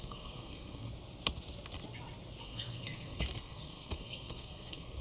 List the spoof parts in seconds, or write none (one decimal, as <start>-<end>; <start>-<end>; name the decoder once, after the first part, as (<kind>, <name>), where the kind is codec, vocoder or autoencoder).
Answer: 0.0-0.9 (codec, SNAC); 2.4-5.0